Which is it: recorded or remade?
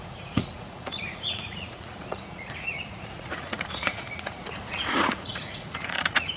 remade